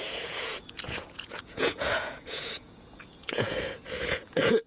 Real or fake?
fake